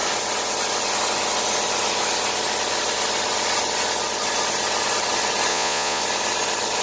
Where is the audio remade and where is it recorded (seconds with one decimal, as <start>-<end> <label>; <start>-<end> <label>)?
0.0-5.5 recorded; 5.5-6.0 remade; 6.0-6.8 recorded